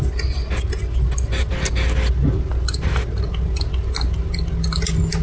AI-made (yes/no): no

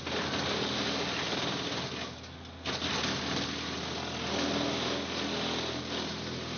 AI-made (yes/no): no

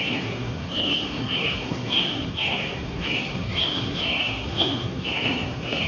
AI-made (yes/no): yes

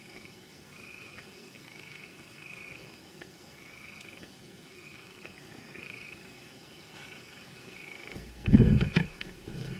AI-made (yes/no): yes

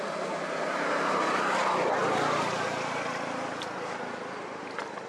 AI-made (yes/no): no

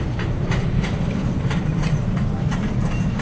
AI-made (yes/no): yes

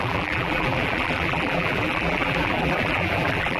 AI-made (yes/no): yes